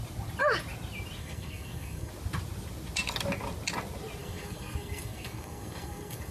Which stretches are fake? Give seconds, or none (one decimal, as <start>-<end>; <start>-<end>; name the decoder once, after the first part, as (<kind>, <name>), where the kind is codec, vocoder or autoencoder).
1.2-2.1 (codec, SNAC); 4.2-6.3